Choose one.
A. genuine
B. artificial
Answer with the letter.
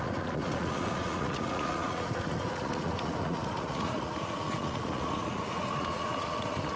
B